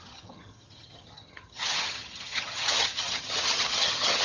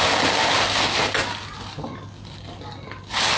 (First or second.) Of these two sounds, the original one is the second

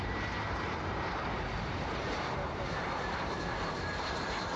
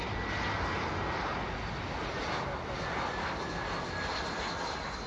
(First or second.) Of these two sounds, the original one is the second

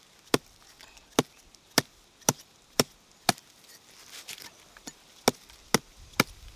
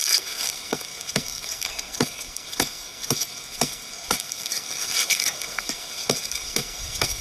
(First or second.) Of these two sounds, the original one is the first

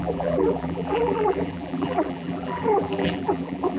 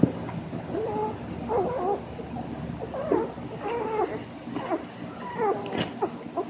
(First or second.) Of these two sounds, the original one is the second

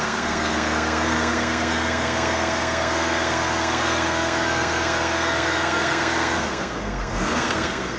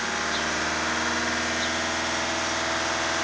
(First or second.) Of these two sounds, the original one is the second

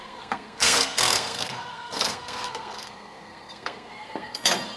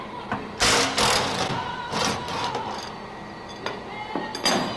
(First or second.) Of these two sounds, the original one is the second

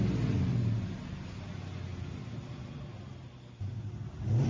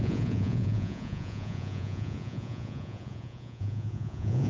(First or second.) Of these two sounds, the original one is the first